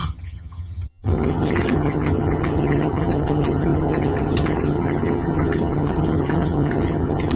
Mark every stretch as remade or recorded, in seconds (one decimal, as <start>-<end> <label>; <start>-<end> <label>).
0.0-7.4 remade

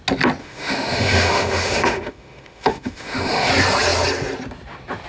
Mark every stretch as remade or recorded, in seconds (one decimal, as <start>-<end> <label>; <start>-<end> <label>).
0.0-0.4 recorded; 0.4-3.5 remade; 3.5-5.1 recorded